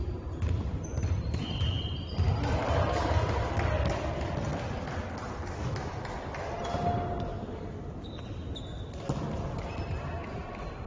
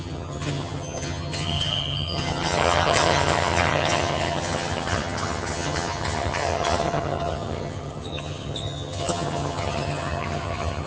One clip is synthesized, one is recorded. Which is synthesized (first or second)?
second